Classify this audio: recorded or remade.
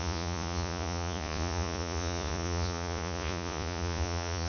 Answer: remade